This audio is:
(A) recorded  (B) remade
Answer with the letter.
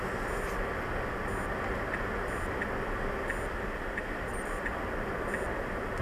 A